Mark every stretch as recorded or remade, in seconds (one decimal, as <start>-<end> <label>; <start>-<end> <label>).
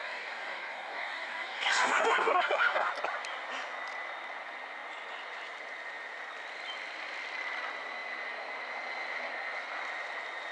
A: 0.0-2.9 remade; 2.9-10.5 recorded